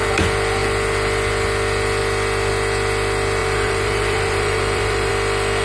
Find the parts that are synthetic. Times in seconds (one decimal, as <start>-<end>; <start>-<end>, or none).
3.4-5.1